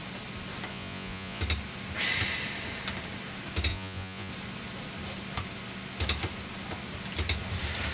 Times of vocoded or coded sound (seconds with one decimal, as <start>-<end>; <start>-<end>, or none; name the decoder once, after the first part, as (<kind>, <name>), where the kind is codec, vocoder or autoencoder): 0.7-1.4 (vocoder, Vocos); 3.7-4.3